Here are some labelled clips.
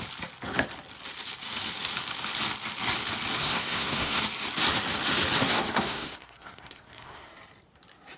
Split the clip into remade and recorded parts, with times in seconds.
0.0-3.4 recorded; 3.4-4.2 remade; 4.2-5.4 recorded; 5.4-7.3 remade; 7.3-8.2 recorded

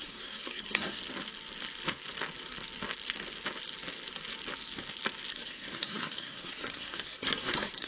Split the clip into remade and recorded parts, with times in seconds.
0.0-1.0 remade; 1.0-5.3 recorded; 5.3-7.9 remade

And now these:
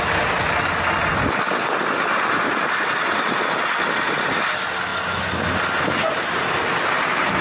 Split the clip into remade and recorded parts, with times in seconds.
0.0-7.4 recorded

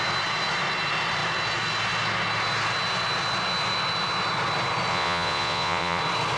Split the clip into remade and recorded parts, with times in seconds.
0.0-4.9 recorded; 4.9-6.0 remade; 6.0-6.4 recorded

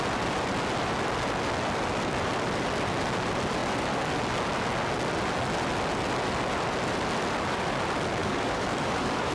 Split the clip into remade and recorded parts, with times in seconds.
0.0-8.2 recorded; 8.2-9.3 remade